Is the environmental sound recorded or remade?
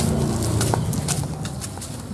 recorded